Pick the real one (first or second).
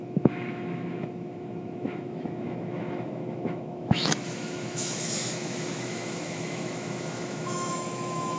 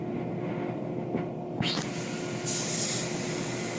second